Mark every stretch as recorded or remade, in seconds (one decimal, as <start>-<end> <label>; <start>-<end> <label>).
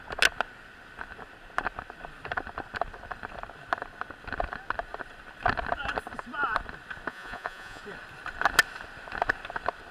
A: 0.0-7.1 recorded; 7.1-7.8 remade; 7.8-9.9 recorded